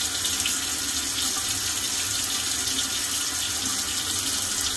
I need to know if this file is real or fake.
real